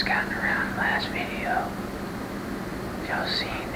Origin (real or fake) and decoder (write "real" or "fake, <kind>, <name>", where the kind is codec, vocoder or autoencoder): fake, vocoder, BigVGAN v2